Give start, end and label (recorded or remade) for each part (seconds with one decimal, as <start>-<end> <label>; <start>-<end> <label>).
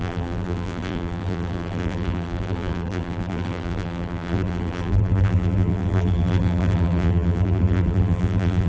0.0-8.7 remade